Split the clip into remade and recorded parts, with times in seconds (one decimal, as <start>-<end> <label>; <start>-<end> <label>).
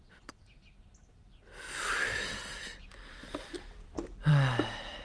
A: 0.0-5.0 recorded